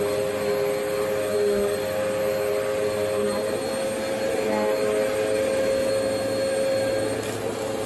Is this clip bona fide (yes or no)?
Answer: yes